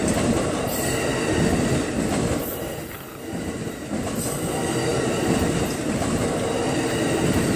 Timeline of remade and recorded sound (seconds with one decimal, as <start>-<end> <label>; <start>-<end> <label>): 0.0-7.6 recorded